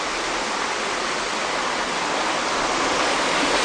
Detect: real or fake real